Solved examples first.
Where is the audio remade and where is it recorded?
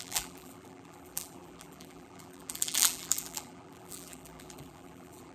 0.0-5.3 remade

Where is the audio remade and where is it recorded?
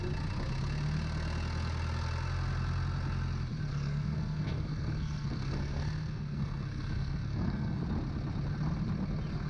0.0-3.7 recorded; 3.7-7.8 remade; 7.8-9.5 recorded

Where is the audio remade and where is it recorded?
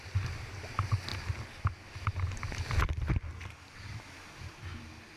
0.0-5.2 recorded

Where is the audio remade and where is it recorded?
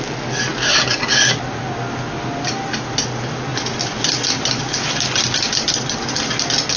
0.0-6.8 recorded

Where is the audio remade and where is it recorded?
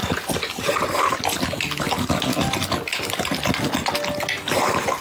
0.0-1.2 remade; 1.2-5.0 recorded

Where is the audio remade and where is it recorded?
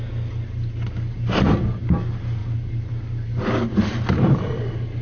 0.0-2.4 recorded; 2.4-2.9 remade; 2.9-3.3 recorded; 3.3-4.4 remade; 4.4-5.0 recorded